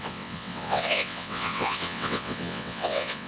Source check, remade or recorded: remade